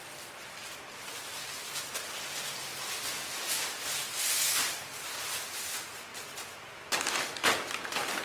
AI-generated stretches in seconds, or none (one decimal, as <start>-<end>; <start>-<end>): 0.0-3.4; 4.0-4.5